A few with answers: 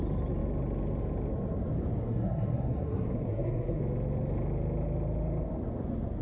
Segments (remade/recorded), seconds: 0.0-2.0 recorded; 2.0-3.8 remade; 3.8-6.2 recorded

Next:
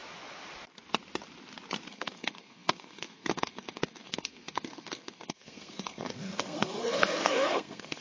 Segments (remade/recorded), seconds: 0.0-1.9 recorded; 1.9-8.0 remade

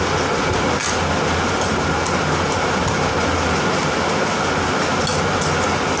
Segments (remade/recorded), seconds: 0.0-6.0 recorded

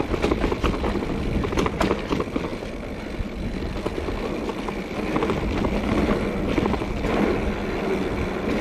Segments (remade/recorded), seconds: 0.0-8.6 recorded

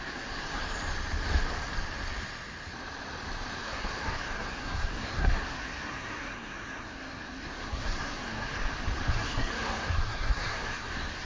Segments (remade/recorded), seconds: 0.0-0.6 remade; 0.6-3.6 recorded; 3.6-8.5 remade; 8.5-9.1 recorded; 9.1-11.3 remade

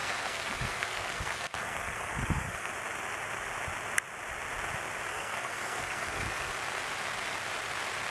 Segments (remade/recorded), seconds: 0.0-2.7 remade; 2.7-5.1 recorded; 5.1-6.5 remade; 6.5-8.1 recorded

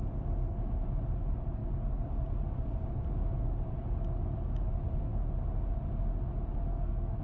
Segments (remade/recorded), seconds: 0.0-6.7 recorded; 6.7-7.2 remade

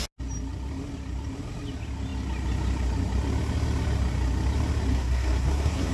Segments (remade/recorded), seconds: 0.0-4.9 recorded; 4.9-5.9 remade